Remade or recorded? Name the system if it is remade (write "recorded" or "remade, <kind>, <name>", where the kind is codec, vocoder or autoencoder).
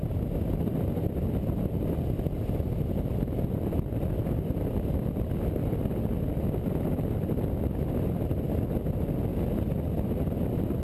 recorded